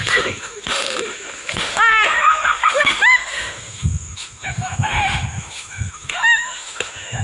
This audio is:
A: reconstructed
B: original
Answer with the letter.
A